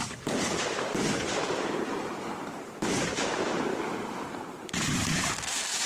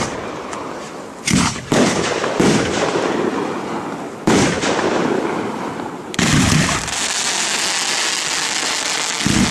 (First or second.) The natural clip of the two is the second